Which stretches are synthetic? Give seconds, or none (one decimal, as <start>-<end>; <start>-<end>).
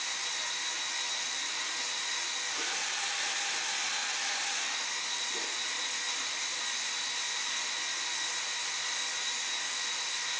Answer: none